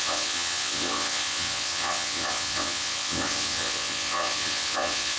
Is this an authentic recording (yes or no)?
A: no